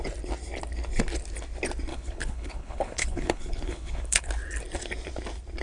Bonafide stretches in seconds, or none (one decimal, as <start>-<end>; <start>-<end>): 0.0-1.9; 4.2-5.6

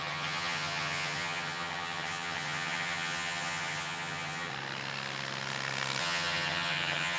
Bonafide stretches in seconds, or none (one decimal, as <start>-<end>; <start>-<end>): 4.5-6.0